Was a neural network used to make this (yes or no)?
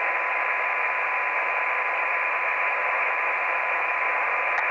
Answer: no